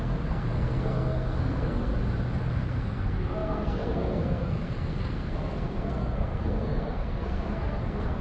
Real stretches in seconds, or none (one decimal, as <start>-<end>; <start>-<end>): 1.9-2.4